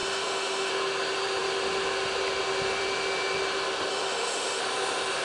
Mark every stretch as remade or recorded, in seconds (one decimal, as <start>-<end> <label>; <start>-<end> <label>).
0.0-0.7 remade; 0.7-3.9 recorded; 3.9-4.6 remade; 4.6-5.2 recorded